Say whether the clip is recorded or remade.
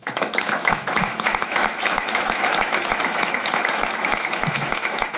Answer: remade